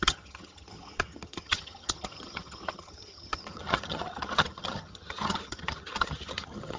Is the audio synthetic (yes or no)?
yes